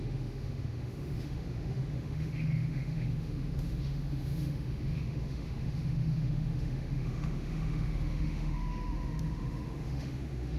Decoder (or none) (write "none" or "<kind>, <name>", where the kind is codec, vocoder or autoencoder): autoencoder, DAC-VAE